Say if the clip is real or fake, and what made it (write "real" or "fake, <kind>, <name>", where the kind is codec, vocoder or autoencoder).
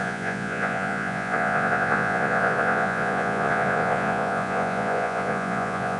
fake, vocoder, Vocos